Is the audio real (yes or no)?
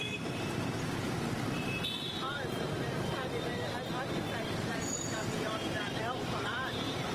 no